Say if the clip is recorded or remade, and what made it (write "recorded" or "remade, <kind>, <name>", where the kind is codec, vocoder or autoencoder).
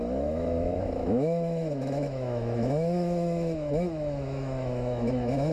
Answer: remade, autoencoder, DAC-VAE